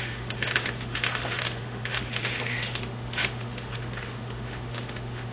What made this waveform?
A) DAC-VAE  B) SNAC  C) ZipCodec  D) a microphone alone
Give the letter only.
A